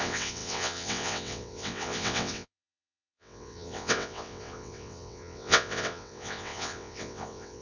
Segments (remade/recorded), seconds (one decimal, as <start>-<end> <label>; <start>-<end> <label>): 0.0-7.6 remade